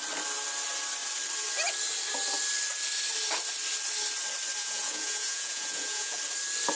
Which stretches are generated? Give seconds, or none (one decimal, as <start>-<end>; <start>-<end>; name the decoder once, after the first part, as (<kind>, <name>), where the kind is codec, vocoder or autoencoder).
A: 4.6-6.2 (vocoder, Vocos)